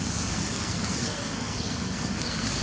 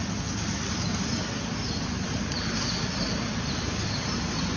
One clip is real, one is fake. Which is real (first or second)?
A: second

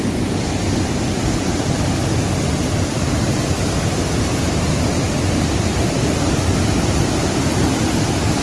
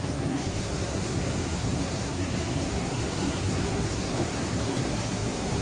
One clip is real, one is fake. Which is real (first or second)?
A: first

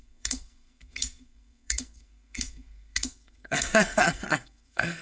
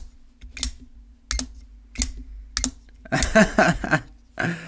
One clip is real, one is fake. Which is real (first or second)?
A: second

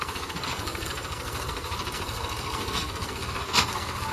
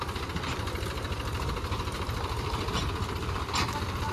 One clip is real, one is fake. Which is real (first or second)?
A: second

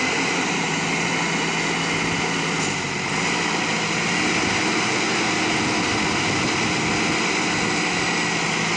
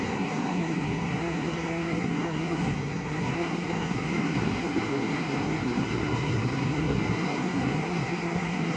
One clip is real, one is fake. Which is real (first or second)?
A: first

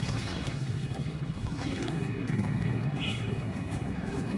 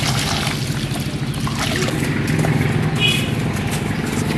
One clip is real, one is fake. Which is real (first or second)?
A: second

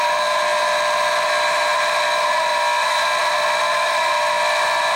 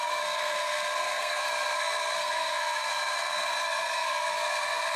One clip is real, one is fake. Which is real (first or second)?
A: first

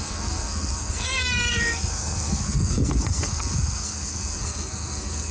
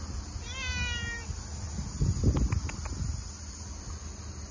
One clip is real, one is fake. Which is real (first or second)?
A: second